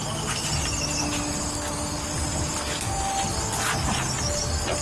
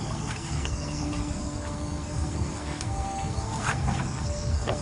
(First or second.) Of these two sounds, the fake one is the second